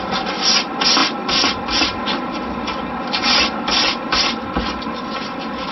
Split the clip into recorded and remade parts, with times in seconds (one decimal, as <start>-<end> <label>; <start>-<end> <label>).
0.0-5.7 recorded